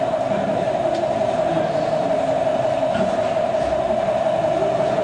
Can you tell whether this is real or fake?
real